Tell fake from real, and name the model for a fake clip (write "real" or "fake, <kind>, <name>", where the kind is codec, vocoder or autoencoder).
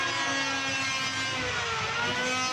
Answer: real